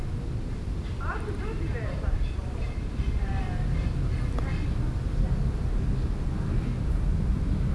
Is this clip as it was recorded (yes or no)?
yes